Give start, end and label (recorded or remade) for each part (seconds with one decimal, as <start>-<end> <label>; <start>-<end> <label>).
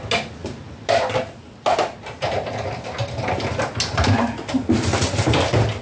0.0-5.8 recorded